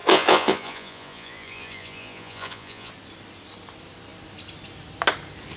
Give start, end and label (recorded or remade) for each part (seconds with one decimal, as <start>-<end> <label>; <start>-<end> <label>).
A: 0.0-2.9 remade; 2.9-5.6 recorded